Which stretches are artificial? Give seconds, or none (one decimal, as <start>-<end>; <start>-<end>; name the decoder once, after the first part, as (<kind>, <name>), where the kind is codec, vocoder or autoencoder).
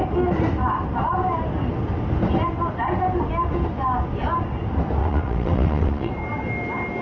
5.0-6.1 (vocoder, WaveNeXt)